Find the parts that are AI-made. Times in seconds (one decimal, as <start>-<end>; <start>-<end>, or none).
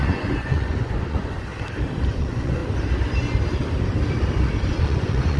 0.0-1.5; 2.1-2.6; 4.8-5.4